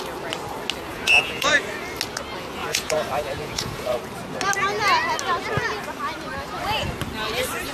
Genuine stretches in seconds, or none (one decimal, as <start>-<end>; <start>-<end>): 0.0-0.9; 1.5-2.6; 4.0-7.7